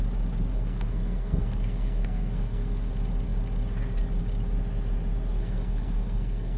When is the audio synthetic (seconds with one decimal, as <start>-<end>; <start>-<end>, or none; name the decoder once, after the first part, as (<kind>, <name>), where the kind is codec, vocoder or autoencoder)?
0.5-2.9 (codec, SNAC); 5.3-6.6